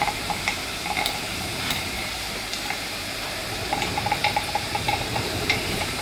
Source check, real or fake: fake